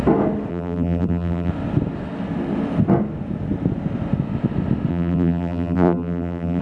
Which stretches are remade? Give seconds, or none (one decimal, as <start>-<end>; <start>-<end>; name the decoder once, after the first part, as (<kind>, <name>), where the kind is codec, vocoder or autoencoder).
0.5-1.5 (vocoder, BigVGAN v2); 4.9-6.6